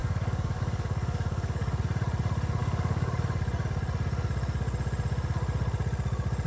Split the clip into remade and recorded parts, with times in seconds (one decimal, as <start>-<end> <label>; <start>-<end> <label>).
0.0-1.8 remade; 1.8-2.6 recorded; 2.6-3.2 remade; 3.2-6.5 recorded